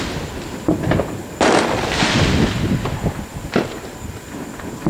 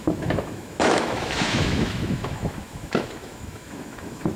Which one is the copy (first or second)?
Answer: second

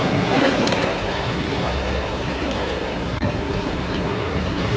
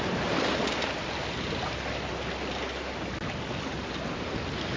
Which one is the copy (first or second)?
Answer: first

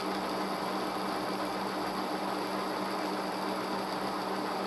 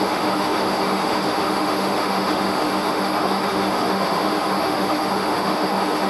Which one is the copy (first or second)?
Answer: second